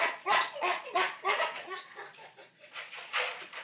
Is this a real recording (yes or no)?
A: no